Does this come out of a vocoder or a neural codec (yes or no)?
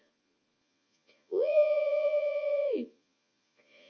yes